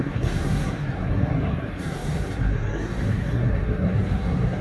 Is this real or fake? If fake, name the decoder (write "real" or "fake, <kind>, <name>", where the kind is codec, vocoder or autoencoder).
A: fake, codec, SNAC